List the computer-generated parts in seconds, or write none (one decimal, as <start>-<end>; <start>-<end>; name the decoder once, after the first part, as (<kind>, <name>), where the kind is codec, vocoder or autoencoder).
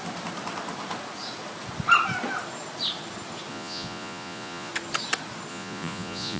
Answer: 3.5-4.7 (vocoder, Vocos); 5.5-6.4